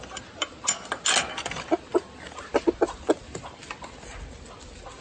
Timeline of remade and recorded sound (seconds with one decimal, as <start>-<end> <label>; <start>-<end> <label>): 0.0-5.0 recorded